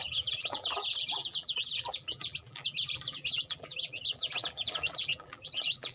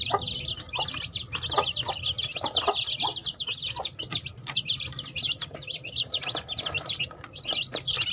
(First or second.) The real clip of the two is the second